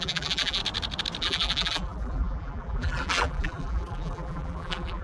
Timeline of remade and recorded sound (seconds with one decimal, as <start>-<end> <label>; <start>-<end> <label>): 0.0-0.6 remade; 0.6-1.2 recorded; 1.2-5.0 remade